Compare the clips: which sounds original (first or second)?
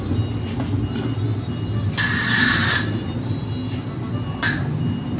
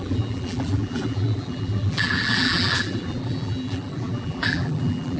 first